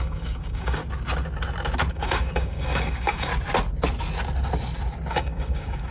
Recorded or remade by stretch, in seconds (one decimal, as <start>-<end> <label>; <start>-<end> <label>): 0.0-0.8 remade; 0.8-1.9 recorded; 1.9-3.3 remade; 3.3-5.1 recorded; 5.1-5.9 remade